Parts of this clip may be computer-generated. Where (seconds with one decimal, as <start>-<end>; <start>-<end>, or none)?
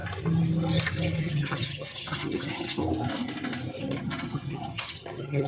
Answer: 1.2-2.8; 3.8-5.5